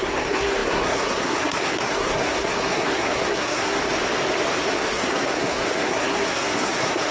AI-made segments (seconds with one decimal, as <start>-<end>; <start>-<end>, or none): 0.0-3.8; 4.7-7.1

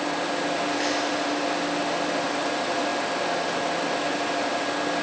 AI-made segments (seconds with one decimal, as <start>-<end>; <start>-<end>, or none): none

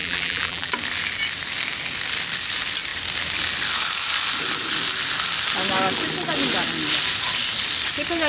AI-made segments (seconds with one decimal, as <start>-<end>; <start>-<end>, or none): 0.0-0.7

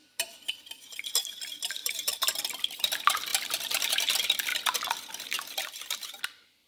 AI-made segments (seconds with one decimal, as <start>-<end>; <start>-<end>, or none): 0.0-4.5; 5.1-6.7

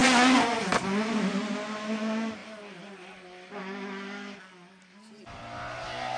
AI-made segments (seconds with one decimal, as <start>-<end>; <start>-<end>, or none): none

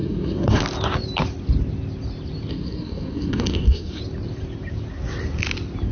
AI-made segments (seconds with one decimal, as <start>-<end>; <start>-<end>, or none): 0.0-0.6; 2.5-4.0